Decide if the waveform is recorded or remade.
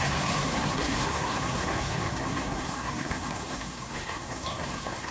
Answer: remade